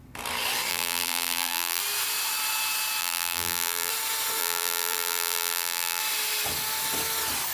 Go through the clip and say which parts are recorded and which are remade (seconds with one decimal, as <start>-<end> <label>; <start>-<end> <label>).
0.0-0.7 recorded; 0.7-1.8 remade; 1.8-3.0 recorded; 3.0-3.9 remade; 3.9-4.4 recorded; 4.4-6.0 remade; 6.0-7.5 recorded

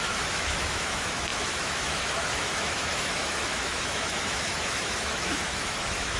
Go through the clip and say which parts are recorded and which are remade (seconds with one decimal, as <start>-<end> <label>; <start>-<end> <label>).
0.0-6.2 remade

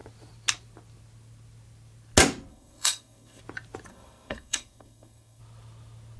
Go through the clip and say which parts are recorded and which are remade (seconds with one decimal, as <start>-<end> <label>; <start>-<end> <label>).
0.0-2.5 recorded; 2.5-3.4 remade; 3.4-3.9 recorded; 3.9-5.4 remade; 5.4-6.2 recorded

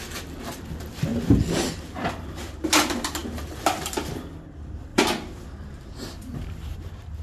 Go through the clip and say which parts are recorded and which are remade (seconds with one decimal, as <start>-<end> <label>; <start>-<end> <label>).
0.0-3.2 recorded; 3.2-4.1 remade; 4.1-4.9 recorded; 4.9-7.2 remade

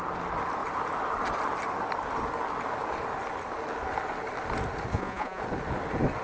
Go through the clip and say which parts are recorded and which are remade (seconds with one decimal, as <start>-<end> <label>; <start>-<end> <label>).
0.0-4.9 recorded; 4.9-5.4 remade; 5.4-6.2 recorded

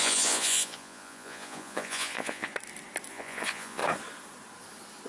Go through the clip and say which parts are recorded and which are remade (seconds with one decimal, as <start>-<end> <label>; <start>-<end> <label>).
0.0-2.5 remade; 2.5-3.1 recorded; 3.1-3.8 remade; 3.8-5.1 recorded